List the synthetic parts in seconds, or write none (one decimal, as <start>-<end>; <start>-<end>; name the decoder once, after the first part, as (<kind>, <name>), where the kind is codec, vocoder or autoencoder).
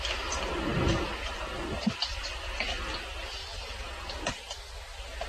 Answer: 2.2-2.7 (vocoder, BigVGAN v2); 3.4-4.2